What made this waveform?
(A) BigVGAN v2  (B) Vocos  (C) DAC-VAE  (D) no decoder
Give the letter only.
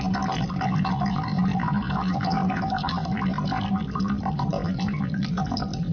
A